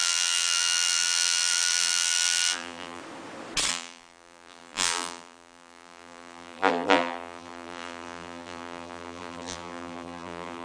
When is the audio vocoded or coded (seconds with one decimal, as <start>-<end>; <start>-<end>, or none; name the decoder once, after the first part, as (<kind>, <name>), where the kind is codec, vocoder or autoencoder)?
0.0-3.0 (vocoder, BigVGAN v2); 3.7-10.6